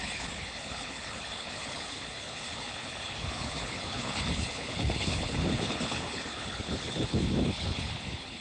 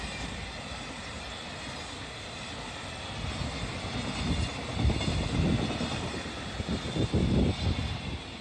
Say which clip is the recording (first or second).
second